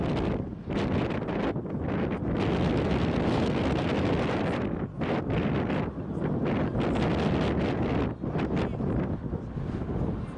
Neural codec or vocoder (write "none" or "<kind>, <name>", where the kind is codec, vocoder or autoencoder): none